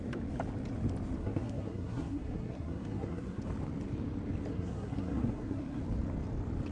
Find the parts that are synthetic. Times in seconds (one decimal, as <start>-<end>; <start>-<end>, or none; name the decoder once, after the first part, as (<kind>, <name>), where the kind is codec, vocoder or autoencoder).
1.2-3.4 (codec, SNAC); 4.5-5.8